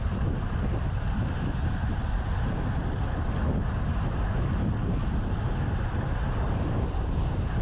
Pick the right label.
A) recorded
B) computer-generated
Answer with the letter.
A